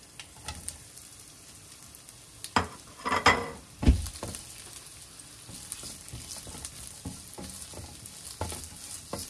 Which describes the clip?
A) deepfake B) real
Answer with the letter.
B